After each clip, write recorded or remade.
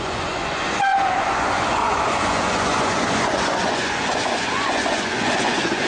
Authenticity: remade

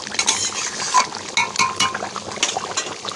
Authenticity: recorded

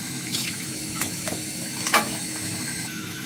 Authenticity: remade